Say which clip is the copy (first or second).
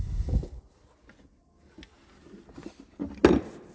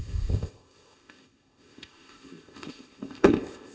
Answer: second